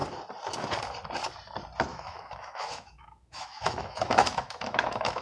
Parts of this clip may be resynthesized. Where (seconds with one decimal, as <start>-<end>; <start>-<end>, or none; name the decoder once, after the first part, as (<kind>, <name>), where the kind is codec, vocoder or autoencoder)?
1.9-5.2 (autoencoder, DAC-VAE)